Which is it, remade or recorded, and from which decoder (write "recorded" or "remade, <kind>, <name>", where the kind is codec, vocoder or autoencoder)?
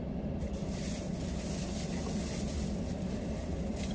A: recorded